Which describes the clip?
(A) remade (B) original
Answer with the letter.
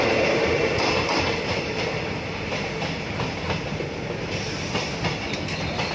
B